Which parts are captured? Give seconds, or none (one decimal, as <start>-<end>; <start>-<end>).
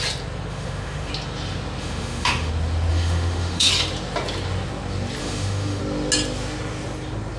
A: 0.0-0.5; 1.1-1.8; 2.5-2.9; 3.7-5.2; 5.8-7.4